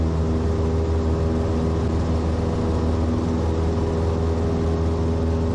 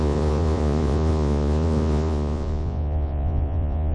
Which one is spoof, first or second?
second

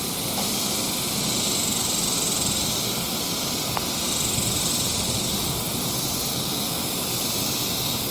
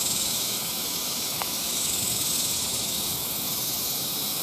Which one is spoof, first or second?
second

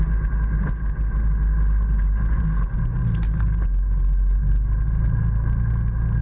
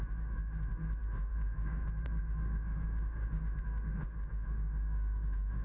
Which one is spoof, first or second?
second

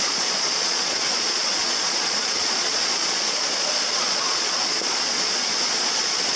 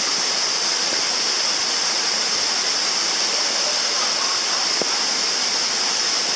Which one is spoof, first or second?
first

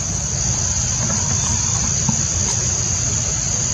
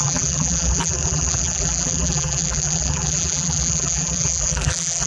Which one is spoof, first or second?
second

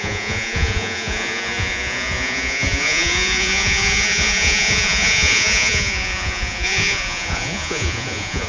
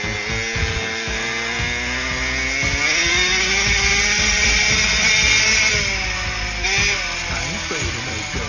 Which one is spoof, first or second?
first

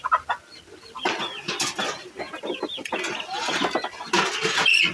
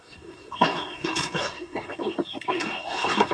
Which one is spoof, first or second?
second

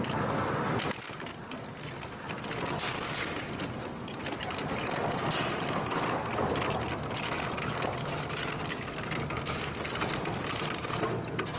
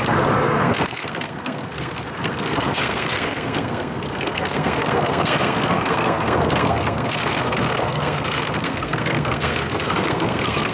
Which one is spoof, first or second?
second